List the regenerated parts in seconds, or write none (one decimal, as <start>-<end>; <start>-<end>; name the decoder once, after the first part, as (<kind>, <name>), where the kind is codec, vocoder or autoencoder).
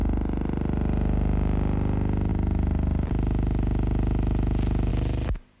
none